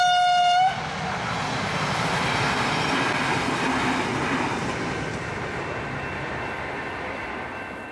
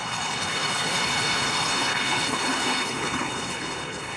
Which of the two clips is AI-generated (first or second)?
second